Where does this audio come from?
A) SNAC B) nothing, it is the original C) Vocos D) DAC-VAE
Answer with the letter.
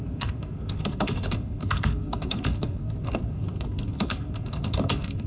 A